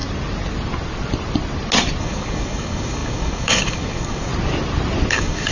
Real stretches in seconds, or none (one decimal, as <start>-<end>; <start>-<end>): 0.0-2.0; 4.3-5.1